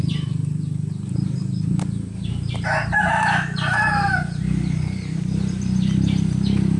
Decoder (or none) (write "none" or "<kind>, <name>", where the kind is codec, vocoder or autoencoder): vocoder, BigVGAN v2